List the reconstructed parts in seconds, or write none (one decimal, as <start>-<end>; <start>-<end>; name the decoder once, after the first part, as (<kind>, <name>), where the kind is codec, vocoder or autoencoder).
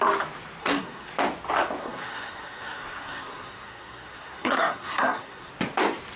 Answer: 0.6-1.1 (codec, SNAC); 1.8-5.5